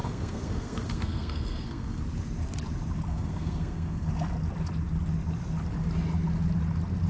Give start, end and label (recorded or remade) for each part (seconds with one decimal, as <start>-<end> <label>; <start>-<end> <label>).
0.0-2.0 remade; 2.0-3.1 recorded; 3.1-4.1 remade; 4.1-7.1 recorded